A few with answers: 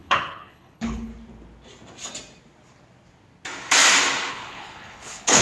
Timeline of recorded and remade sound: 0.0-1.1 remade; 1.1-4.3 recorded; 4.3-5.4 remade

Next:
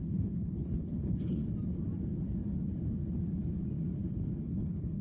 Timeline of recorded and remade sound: 0.0-1.4 remade; 1.4-4.4 recorded; 4.4-5.0 remade

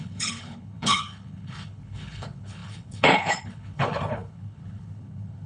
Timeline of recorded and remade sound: 0.0-5.5 remade